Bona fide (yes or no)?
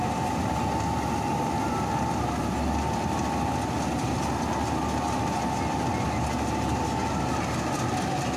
yes